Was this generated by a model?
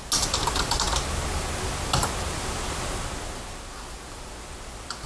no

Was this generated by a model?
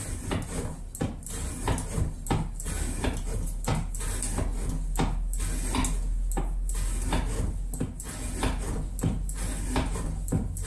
no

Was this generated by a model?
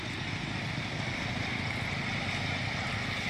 no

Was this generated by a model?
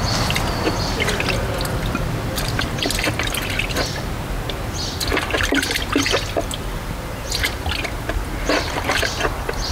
no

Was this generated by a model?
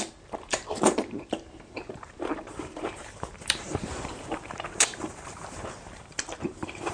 yes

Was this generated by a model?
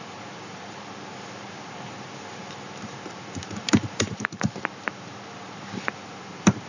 yes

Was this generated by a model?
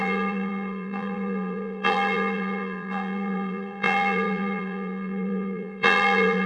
yes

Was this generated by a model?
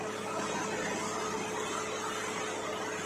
no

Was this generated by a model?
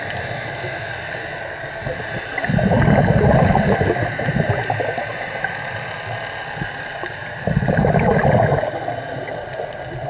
no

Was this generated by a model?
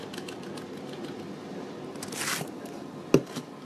no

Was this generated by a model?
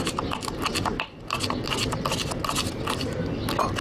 no